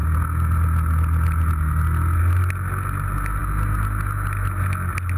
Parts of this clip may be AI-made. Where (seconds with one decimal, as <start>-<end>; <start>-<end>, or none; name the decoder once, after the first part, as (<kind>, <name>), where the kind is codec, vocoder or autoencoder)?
none